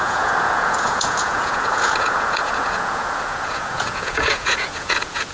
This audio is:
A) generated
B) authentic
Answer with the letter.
A